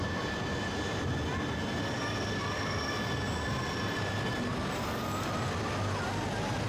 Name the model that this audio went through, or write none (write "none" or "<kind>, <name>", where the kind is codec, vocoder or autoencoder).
none